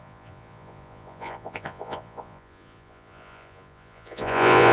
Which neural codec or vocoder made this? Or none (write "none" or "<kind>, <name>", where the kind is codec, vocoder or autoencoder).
vocoder, Vocos